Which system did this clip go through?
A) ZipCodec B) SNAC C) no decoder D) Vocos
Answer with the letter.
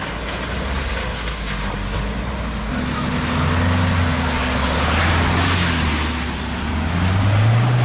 C